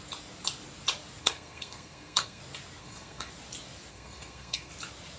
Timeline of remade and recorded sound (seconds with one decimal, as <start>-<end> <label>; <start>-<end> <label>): 0.0-1.2 recorded; 1.2-2.4 remade; 2.4-2.8 recorded; 2.8-3.3 remade; 3.3-3.9 recorded; 3.9-4.7 remade; 4.7-5.2 recorded